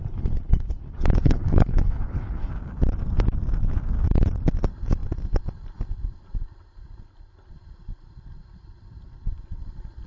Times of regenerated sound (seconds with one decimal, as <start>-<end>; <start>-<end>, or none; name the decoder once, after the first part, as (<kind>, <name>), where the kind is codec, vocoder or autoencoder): 0.0-2.5 (codec, HILCodec)